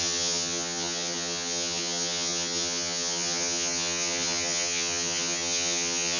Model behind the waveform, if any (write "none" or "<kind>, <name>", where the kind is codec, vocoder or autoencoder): vocoder, HiFi-GAN